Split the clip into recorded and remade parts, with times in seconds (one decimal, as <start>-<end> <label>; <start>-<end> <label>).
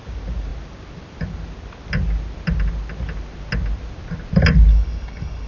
0.0-4.7 recorded; 4.7-5.5 remade